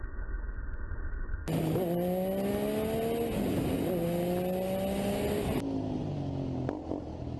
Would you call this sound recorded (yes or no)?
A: yes